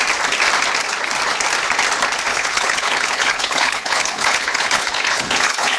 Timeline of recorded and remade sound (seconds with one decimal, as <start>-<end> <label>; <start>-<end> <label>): 0.0-2.3 recorded; 2.3-5.8 remade